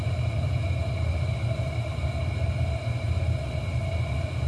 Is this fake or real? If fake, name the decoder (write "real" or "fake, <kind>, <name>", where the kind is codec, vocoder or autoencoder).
real